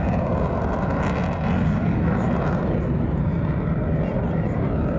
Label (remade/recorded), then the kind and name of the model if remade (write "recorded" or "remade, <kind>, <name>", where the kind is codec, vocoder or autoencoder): recorded